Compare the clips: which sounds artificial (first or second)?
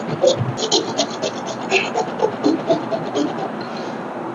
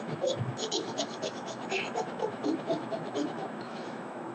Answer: second